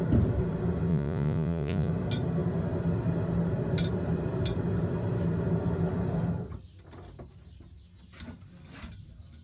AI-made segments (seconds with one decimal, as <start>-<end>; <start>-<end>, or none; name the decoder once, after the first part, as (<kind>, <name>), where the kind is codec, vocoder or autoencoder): 0.9-1.9 (vocoder, Vocos)